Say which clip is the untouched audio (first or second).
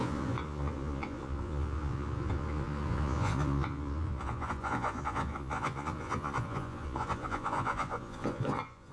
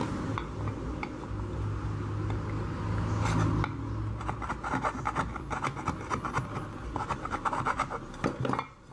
second